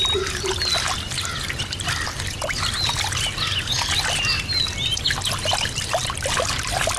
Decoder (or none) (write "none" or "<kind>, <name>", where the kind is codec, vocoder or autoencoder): none